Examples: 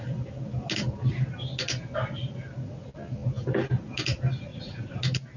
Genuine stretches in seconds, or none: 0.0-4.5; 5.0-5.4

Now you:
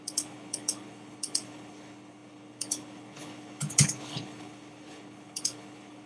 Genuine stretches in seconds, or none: none

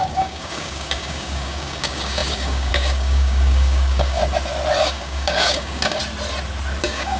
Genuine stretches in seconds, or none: 4.2-4.8; 6.0-6.8

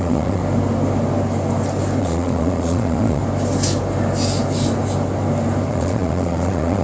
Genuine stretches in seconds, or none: 0.4-2.0; 3.2-5.7

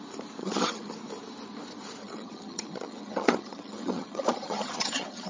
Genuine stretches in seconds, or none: 0.0-0.4; 0.9-2.0

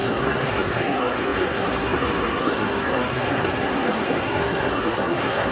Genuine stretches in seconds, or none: none

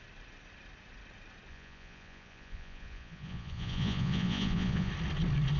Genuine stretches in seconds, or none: 0.0-1.5; 4.9-5.6

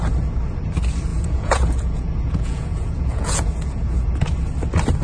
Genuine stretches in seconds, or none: 0.0-1.1; 4.1-5.0